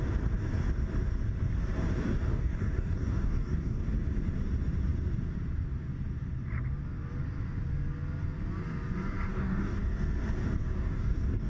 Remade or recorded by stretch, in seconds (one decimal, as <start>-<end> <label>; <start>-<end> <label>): 0.0-2.3 recorded; 2.3-3.9 remade; 3.9-9.3 recorded; 9.3-9.8 remade; 9.8-10.6 recorded; 10.6-11.5 remade